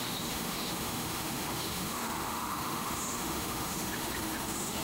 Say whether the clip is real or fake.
fake